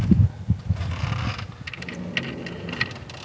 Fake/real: real